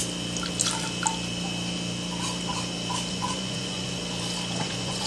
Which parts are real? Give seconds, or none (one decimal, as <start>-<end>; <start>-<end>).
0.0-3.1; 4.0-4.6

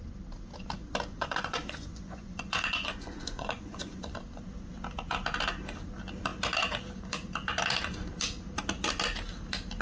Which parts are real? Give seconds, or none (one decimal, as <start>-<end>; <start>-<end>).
0.0-1.1; 4.0-9.8

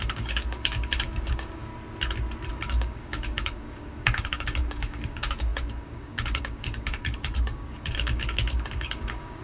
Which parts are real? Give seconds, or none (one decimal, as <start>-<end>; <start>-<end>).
1.7-2.5

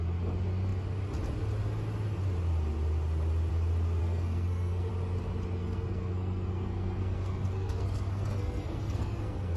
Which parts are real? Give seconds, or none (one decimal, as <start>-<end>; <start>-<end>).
0.0-4.0; 4.9-5.6